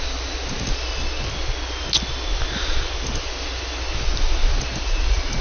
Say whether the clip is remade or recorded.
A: recorded